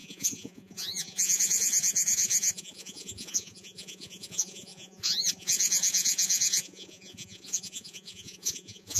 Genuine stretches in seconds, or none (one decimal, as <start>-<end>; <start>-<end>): none